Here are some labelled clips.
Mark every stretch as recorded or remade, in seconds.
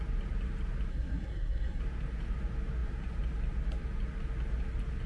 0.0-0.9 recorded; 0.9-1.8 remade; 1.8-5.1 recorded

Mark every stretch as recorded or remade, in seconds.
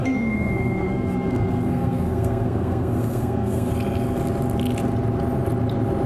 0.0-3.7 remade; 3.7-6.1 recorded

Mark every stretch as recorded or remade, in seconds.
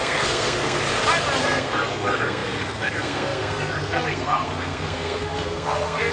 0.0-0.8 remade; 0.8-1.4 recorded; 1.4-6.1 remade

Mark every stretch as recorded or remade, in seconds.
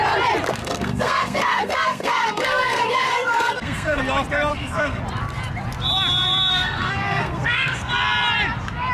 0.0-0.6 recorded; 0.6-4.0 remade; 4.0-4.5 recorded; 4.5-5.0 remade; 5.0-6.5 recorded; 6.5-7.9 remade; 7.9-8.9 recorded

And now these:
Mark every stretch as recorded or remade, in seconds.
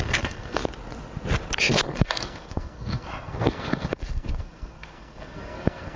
0.0-0.6 remade; 0.6-1.7 recorded; 1.7-6.0 remade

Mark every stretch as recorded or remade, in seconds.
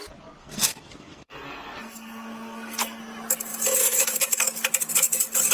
0.0-0.4 recorded; 0.4-3.0 remade; 3.0-5.5 recorded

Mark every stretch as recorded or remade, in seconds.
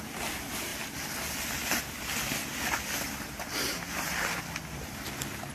0.0-5.5 recorded